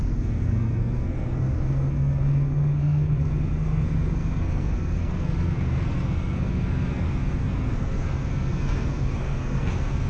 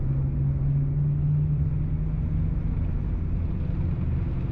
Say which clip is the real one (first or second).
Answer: second